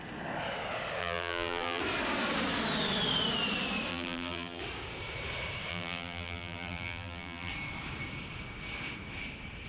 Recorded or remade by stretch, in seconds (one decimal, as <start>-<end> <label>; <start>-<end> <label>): 0.0-1.0 recorded; 1.0-1.8 remade; 1.8-3.9 recorded; 3.9-4.6 remade; 4.6-5.7 recorded; 5.7-7.5 remade; 7.5-9.7 recorded